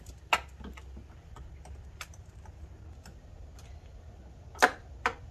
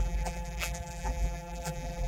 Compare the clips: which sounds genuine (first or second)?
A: first